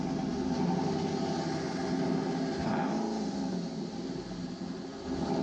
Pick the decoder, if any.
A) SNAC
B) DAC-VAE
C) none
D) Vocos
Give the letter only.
C